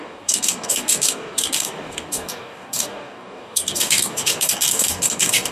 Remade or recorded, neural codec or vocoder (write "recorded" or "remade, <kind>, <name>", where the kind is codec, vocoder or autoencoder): remade, codec, DAC